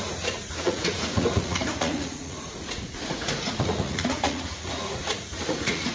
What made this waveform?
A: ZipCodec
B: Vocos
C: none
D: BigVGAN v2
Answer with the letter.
B